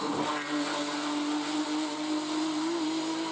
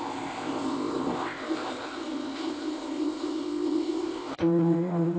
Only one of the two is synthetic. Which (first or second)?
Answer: second